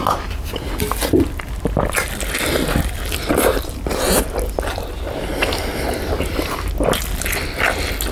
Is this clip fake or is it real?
real